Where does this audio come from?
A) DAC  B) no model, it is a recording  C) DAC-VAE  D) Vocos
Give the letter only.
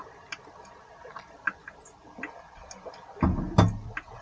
B